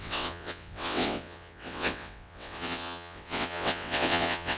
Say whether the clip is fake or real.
fake